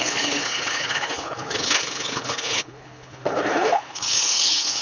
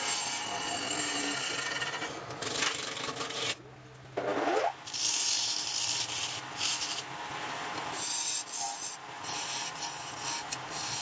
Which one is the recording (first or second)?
second